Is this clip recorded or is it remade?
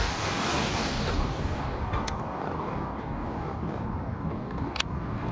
remade